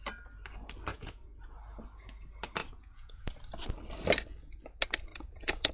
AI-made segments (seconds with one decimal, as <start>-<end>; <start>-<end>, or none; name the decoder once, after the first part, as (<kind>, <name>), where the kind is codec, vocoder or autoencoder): 0.9-1.5 (vocoder, Vocos); 2.6-3.3; 5.1-5.7